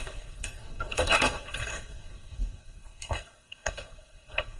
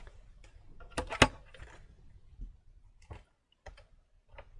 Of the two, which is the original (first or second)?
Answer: second